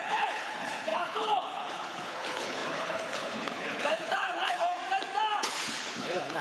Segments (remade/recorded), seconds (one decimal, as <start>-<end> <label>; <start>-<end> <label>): 0.0-4.8 remade; 4.8-5.4 recorded; 5.4-6.4 remade